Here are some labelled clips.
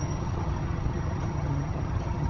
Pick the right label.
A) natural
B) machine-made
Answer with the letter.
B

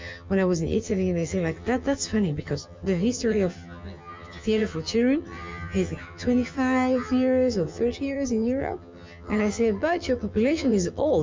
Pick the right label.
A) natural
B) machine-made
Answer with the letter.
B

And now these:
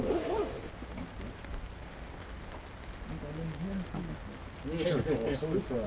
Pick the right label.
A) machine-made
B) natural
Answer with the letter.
B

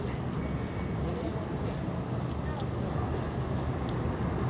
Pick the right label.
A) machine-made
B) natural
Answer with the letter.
B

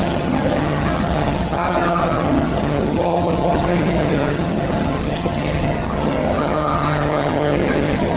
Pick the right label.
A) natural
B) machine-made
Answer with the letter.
B